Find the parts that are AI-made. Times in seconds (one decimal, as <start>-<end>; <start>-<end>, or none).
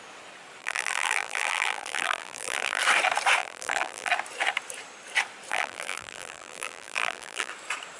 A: 0.6-2.8; 3.4-4.1; 5.5-7.5